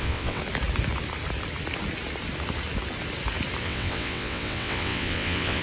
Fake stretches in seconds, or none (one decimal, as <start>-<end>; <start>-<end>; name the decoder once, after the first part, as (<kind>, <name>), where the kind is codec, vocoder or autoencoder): 0.0-0.4 (vocoder, WaveNeXt); 3.6-5.6